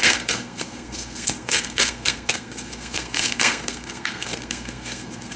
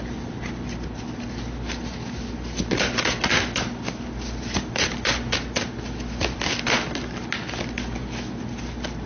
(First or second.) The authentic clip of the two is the second